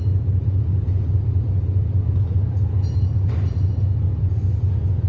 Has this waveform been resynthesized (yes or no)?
no